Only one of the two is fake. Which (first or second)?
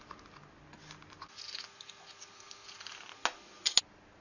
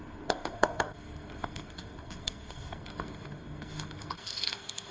second